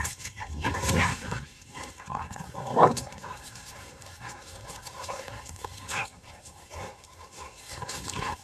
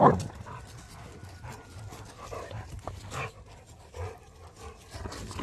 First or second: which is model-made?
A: first